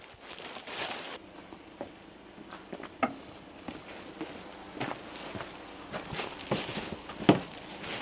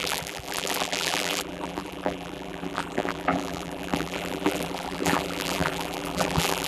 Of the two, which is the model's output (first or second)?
second